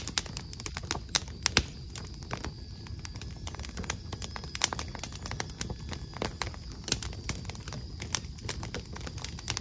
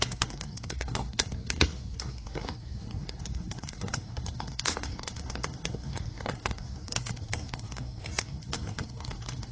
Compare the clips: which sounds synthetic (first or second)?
second